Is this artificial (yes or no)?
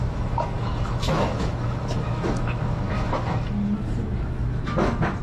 yes